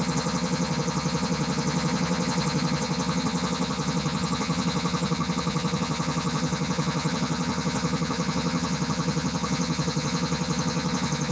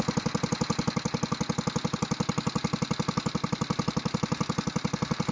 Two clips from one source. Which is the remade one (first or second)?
first